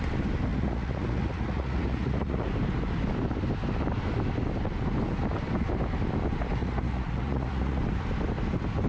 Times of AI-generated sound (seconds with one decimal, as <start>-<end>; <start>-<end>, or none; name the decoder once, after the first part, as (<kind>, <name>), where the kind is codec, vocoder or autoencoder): 0.5-2.5 (vocoder, Vocos); 6.6-7.8